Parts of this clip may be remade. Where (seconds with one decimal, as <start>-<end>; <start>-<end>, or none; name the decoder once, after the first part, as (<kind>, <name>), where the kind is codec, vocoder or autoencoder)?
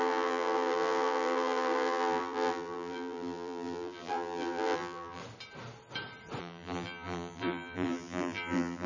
0.0-5.2 (vocoder, BigVGAN v2); 6.4-8.9